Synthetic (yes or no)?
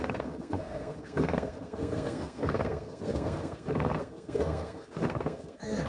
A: yes